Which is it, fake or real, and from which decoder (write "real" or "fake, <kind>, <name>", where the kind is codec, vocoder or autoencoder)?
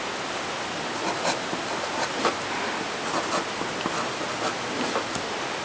real